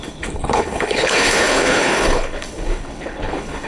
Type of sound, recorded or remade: remade